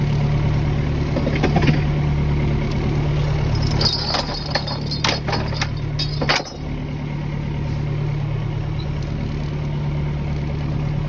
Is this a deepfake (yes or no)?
no